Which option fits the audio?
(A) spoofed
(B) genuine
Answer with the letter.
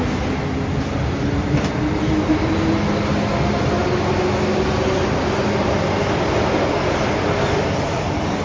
B